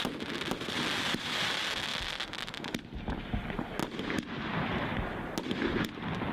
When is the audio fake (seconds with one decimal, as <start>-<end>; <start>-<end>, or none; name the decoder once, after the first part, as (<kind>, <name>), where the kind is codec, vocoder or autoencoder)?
none